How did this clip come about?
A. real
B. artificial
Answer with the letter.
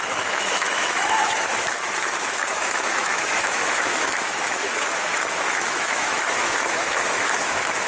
B